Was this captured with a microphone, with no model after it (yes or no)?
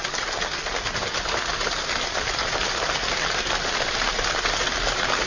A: yes